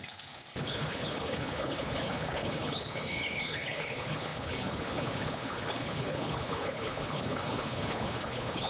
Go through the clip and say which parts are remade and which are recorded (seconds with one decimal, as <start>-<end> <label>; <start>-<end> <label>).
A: 0.0-8.7 remade